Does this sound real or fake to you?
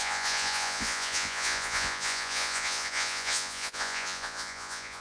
fake